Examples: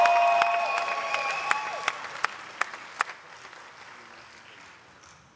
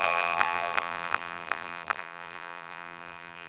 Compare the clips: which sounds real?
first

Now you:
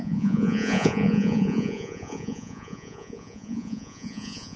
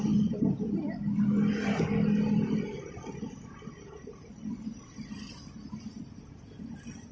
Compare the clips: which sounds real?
second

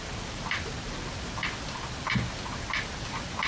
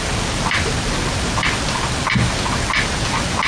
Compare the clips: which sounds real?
second